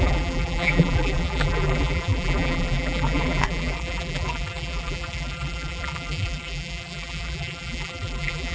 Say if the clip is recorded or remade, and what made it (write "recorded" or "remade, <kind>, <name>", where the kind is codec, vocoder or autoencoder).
remade, vocoder, BigVGAN v2